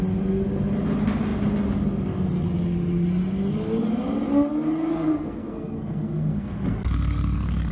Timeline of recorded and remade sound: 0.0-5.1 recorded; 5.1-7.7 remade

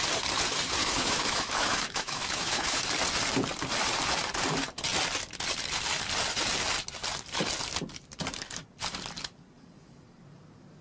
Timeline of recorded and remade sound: 0.0-0.8 recorded; 0.8-2.8 remade; 2.8-10.8 recorded

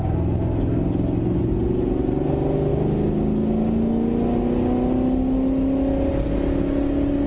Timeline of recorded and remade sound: 0.0-7.3 recorded

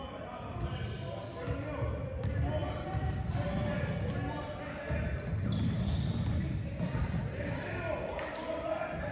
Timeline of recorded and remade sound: 0.0-9.1 recorded

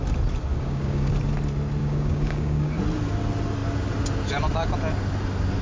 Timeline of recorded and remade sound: 0.0-0.5 recorded; 0.5-1.1 remade; 1.1-1.8 recorded; 1.8-2.8 remade; 2.8-5.6 recorded

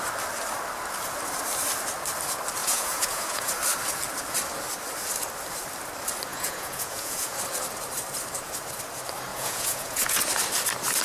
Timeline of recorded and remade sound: 0.0-2.6 recorded; 2.6-3.5 remade; 3.5-6.3 recorded; 6.3-7.3 remade; 7.3-9.3 recorded; 9.3-10.2 remade; 10.2-11.0 recorded

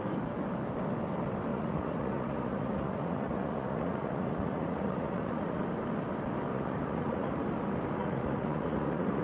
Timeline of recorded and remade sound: 0.0-1.5 recorded; 1.5-5.6 remade; 5.6-6.5 recorded; 6.5-7.4 remade; 7.4-8.0 recorded; 8.0-9.2 remade

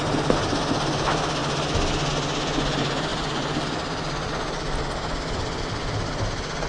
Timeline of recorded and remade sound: 0.0-6.7 recorded